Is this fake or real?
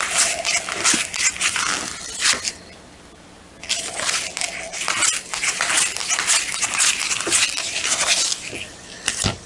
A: real